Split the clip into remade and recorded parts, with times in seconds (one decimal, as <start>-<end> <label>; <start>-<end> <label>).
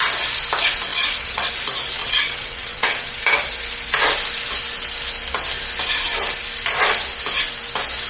0.0-0.9 recorded; 0.9-1.5 remade; 1.5-2.0 recorded; 2.0-3.2 remade; 3.2-8.1 recorded